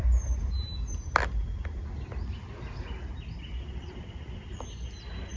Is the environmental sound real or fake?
real